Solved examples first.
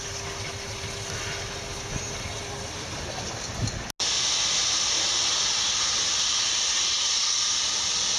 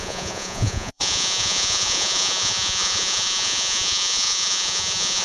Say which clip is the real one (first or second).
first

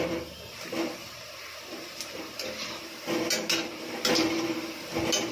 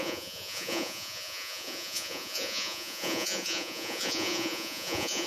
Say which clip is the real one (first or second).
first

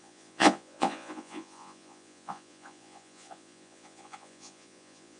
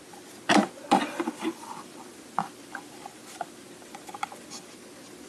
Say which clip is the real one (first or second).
second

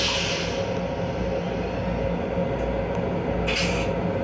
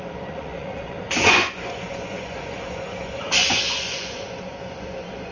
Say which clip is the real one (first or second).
first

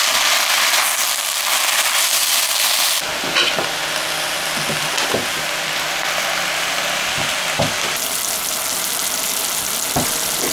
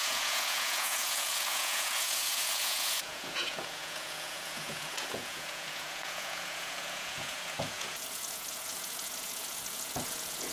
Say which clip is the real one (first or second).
first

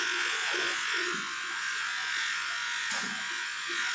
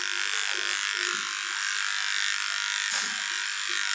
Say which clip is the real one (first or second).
second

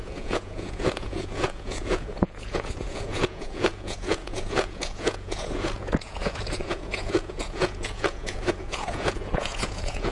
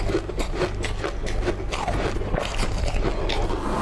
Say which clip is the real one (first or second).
second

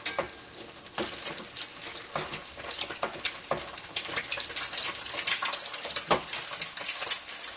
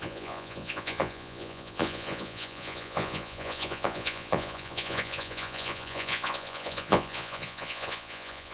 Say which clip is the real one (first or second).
first